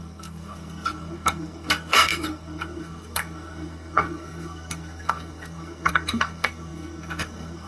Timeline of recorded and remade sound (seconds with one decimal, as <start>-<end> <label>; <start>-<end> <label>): 0.0-7.7 remade